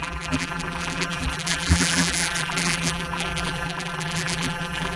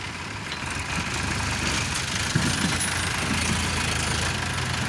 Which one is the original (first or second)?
second